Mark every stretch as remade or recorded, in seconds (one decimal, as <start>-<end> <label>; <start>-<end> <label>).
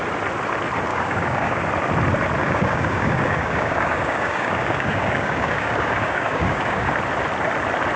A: 0.0-0.9 recorded; 0.9-1.6 remade; 1.6-2.4 recorded; 2.4-6.9 remade; 6.9-8.0 recorded